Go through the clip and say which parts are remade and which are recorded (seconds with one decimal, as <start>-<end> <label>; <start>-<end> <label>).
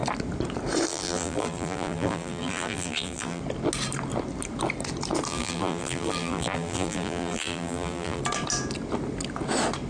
0.0-0.9 recorded; 0.9-3.4 remade; 3.4-5.3 recorded; 5.3-8.2 remade; 8.2-9.9 recorded